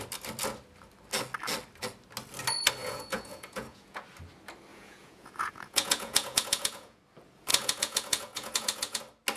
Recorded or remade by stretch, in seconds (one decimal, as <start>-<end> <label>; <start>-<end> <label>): 0.0-2.8 recorded; 2.8-4.0 remade; 4.0-4.7 recorded; 4.7-7.0 remade; 7.0-7.5 recorded; 7.5-9.0 remade; 9.0-9.4 recorded